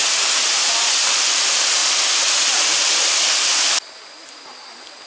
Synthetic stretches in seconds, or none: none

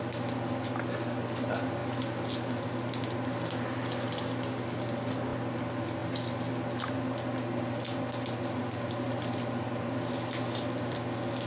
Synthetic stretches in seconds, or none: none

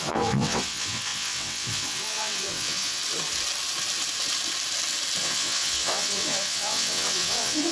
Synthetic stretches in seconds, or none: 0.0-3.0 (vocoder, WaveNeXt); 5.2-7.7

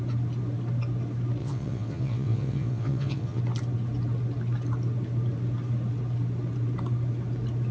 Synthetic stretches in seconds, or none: 1.4-3.4 (vocoder, WaveNeXt)